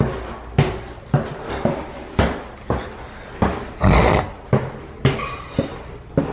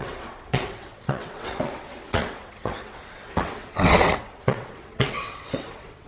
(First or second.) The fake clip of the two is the second